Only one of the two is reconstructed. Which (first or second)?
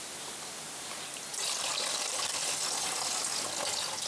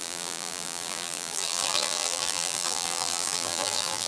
second